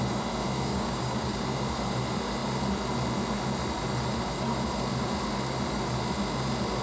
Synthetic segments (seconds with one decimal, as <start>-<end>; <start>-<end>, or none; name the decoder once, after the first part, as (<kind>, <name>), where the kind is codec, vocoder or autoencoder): 0.7-1.4 (codec, DAC)